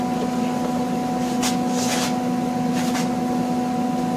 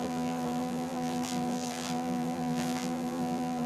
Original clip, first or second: first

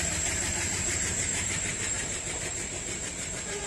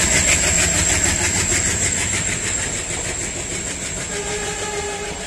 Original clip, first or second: second